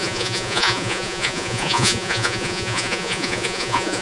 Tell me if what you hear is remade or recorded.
remade